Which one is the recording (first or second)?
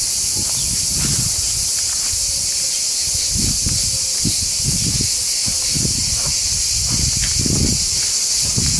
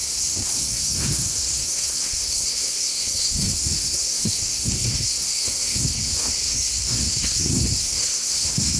first